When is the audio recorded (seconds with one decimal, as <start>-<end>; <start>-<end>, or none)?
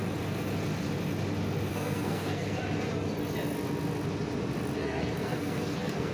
0.0-1.7; 2.6-4.8